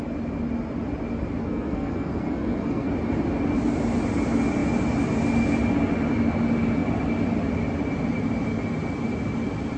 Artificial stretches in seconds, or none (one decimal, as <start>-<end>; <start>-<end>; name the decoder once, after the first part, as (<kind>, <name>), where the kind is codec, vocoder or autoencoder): 1.4-2.9 (codec, SNAC)